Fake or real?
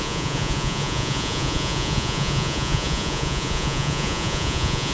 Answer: fake